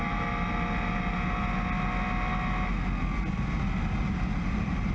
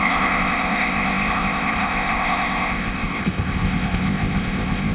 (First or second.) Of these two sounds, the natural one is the first